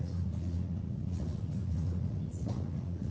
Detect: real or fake fake